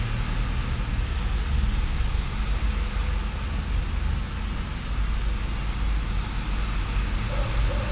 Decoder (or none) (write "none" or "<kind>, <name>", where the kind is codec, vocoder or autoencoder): none